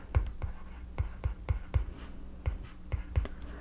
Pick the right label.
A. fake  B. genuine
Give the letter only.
B